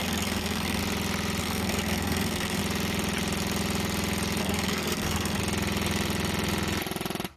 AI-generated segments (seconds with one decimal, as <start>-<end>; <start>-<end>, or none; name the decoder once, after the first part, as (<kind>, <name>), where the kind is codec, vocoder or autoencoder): 0.0-0.8 (codec, SNAC); 1.4-2.6; 4.4-5.4